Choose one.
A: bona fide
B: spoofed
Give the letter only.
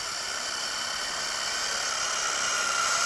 A